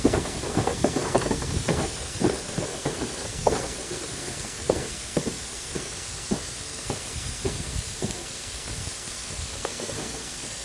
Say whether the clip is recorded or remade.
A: remade